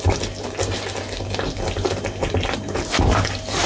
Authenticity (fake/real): real